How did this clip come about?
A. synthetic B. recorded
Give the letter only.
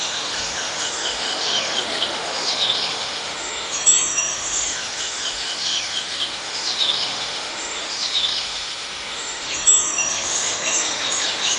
A